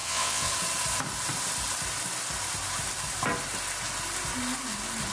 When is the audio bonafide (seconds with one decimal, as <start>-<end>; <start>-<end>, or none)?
0.5-5.1

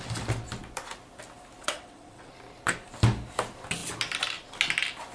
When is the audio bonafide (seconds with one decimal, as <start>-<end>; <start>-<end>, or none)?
0.0-1.6; 2.3-5.1

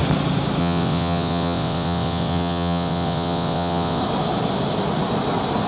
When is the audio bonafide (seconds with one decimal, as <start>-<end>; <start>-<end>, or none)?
0.0-0.6; 4.0-5.7

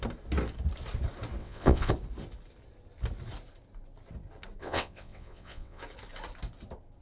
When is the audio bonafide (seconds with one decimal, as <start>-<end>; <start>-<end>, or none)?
0.0-1.4; 1.9-4.6; 5.8-7.0

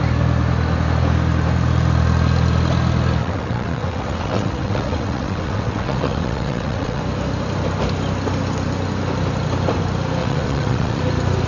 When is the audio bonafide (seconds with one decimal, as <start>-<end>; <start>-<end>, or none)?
0.0-3.2; 7.0-10.2; 11.0-11.5

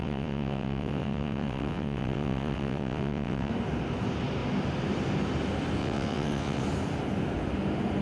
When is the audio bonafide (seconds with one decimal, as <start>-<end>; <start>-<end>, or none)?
3.5-5.8; 6.6-8.0

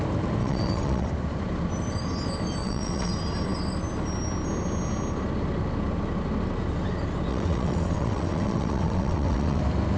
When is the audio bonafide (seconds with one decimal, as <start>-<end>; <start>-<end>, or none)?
0.0-0.4; 1.1-2.6; 3.1-7.3; 9.6-10.0

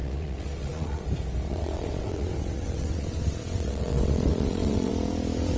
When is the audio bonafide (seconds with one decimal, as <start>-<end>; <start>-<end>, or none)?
1.1-1.5; 4.9-5.6